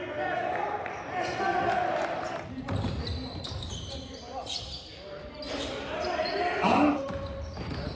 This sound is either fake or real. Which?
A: real